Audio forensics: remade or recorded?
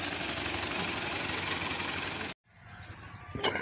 recorded